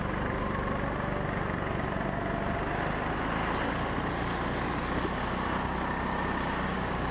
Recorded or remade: recorded